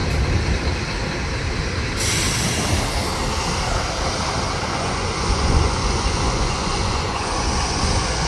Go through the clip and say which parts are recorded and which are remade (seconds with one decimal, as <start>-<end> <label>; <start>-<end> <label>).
0.0-4.7 recorded; 4.7-8.3 remade